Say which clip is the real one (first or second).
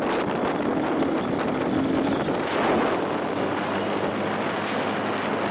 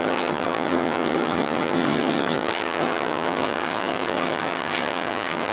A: first